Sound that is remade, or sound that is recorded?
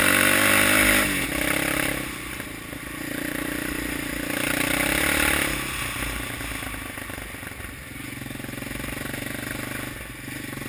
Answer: recorded